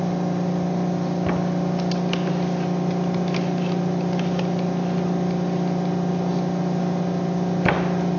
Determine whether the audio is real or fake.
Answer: real